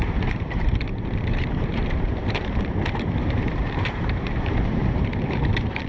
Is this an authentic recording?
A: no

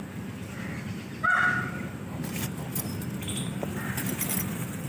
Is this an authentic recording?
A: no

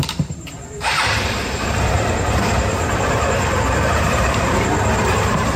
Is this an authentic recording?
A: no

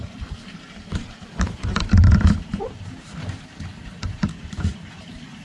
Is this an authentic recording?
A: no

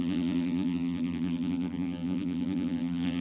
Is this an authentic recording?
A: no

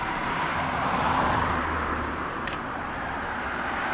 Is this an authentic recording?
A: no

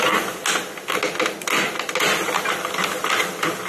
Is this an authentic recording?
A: yes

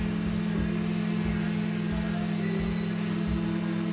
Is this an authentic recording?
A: no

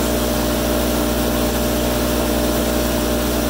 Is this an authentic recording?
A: yes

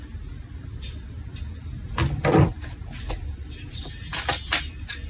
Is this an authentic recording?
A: yes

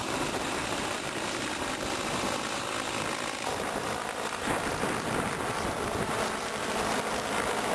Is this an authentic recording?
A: yes